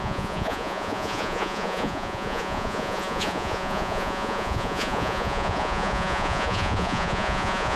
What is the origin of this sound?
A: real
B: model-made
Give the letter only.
B